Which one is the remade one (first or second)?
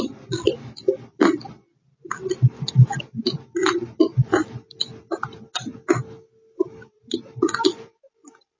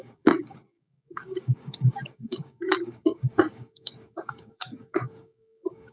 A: second